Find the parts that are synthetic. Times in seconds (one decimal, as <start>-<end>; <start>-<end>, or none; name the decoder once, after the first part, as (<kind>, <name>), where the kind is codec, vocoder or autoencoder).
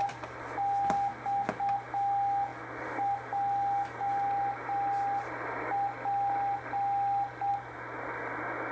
none